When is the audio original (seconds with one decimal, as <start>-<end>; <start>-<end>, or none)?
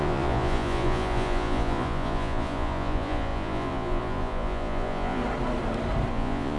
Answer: 5.2-6.1